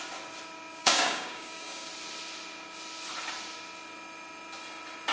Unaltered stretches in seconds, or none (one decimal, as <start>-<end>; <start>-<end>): 0.0-0.8; 1.9-5.1